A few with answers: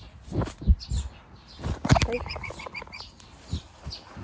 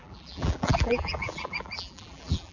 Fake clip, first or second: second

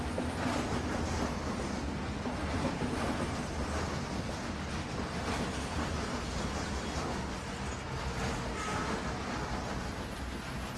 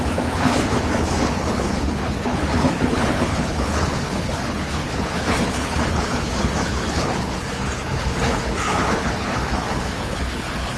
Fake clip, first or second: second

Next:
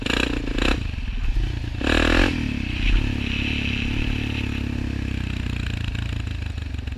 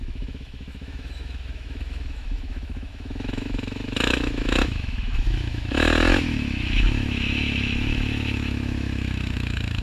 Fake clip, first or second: second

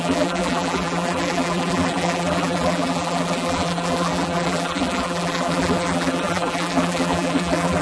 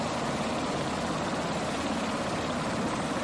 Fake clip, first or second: first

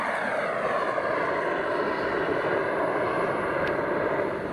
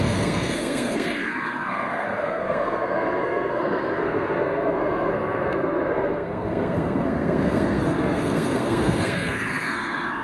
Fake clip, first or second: second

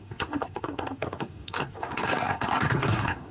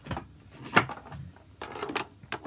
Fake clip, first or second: first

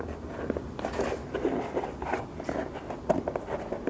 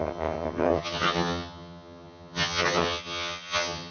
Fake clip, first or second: second